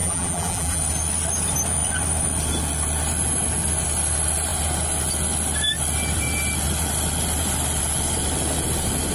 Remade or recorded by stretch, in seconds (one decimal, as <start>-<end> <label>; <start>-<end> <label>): 0.0-0.8 remade; 0.8-9.1 recorded